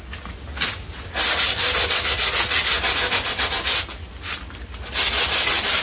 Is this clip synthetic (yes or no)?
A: no